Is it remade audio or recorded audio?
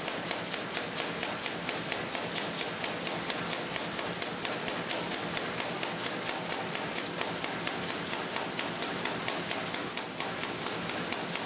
recorded